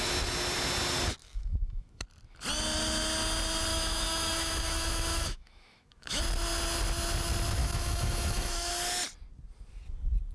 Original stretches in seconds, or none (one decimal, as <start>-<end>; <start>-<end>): 0.0-1.2; 2.0-3.7; 6.2-7.6; 8.7-10.3